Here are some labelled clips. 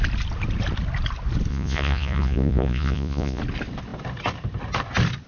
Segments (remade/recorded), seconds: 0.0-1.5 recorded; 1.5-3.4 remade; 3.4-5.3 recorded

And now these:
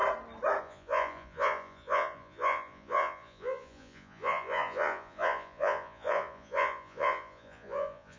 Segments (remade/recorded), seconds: 0.0-0.6 recorded; 0.6-8.2 remade

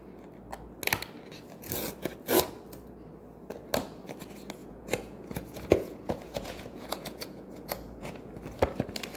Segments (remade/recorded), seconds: 0.0-4.6 recorded; 4.6-8.3 remade; 8.3-9.2 recorded

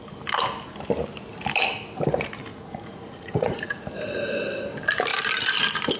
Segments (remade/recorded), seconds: 0.0-2.5 recorded; 2.5-3.9 remade; 3.9-6.0 recorded

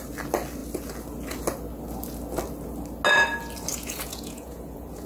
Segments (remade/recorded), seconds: 0.0-3.7 recorded; 3.7-5.1 remade

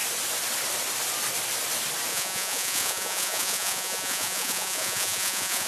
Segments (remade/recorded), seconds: 0.0-2.1 recorded; 2.1-5.7 remade